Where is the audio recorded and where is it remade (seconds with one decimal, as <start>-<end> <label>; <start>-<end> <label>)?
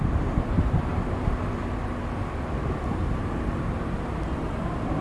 0.0-5.0 recorded